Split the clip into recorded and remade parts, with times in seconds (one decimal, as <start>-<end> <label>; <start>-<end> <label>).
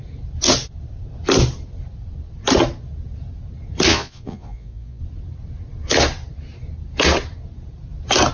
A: 0.0-3.9 recorded; 3.9-5.0 remade; 5.0-8.3 recorded